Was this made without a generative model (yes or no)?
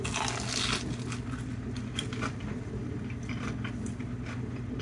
yes